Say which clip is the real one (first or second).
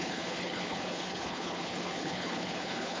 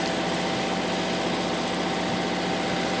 second